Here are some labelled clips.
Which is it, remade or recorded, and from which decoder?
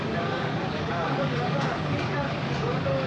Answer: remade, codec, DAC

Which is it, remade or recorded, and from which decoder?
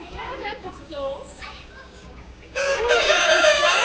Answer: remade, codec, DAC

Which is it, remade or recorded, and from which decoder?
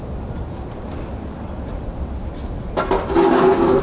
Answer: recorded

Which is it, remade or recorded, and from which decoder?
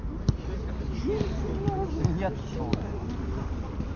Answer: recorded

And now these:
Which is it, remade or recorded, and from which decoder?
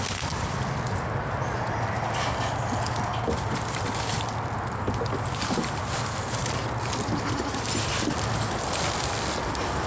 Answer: recorded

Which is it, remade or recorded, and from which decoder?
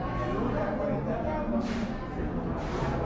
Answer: recorded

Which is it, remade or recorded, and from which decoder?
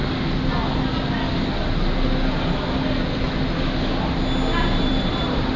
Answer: recorded